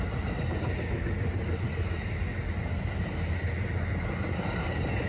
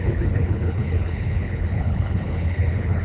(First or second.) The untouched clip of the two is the first